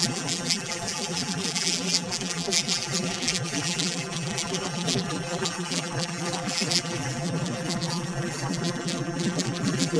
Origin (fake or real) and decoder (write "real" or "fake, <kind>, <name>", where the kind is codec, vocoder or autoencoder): fake, vocoder, BigVGAN v2